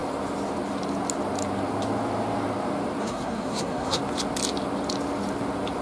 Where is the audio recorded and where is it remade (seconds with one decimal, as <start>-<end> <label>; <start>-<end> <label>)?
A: 0.0-3.0 recorded; 3.0-4.0 remade; 4.0-5.8 recorded